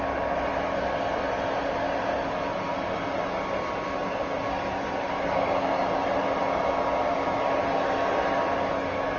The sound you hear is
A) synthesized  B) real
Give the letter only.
B